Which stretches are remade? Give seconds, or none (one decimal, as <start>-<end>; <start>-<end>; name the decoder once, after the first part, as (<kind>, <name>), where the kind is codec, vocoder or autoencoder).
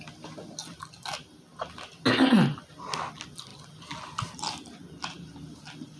none